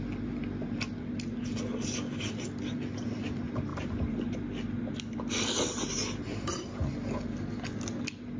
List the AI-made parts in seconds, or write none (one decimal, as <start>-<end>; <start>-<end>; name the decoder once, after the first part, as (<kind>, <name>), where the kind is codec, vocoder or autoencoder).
none